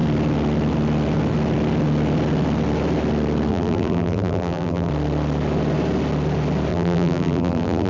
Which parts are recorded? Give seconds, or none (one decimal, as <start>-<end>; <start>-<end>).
0.0-3.5; 4.9-6.7